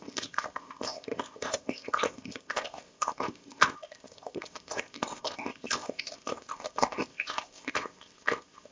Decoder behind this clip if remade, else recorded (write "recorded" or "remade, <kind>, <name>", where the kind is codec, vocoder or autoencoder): remade, codec, ZipCodec